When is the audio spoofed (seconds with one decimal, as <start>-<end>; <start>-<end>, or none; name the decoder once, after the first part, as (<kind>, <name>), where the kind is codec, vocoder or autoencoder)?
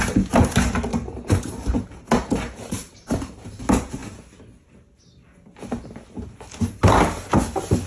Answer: 0.9-3.6 (vocoder, BigVGAN v2)